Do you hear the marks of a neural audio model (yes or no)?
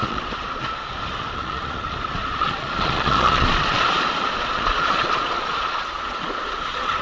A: yes